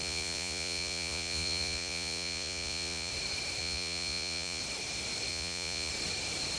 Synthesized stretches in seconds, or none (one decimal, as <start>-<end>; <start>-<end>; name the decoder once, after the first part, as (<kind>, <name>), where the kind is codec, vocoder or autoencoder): 0.0-3.1 (vocoder, Vocos); 3.6-4.6; 5.3-5.9